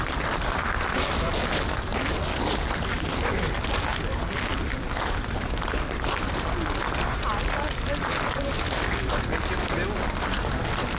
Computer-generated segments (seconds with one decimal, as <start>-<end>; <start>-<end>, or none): none